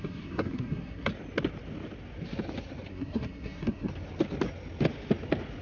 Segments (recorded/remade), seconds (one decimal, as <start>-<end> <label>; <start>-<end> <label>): 0.0-1.1 remade; 1.1-2.9 recorded; 2.9-3.9 remade; 3.9-5.6 recorded